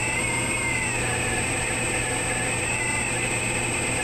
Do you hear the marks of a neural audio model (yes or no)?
no